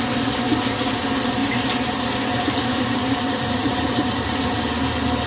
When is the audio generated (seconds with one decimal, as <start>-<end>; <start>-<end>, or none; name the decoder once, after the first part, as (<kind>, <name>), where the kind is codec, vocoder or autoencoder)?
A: 1.4-4.6 (vocoder, BigVGAN v2)